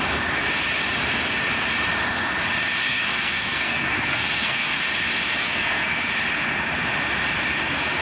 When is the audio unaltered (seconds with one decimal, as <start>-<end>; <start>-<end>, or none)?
0.0-2.8; 4.8-5.3; 6.1-8.0